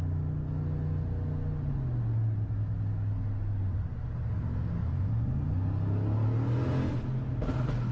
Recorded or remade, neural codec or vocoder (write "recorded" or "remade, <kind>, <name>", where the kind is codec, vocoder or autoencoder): recorded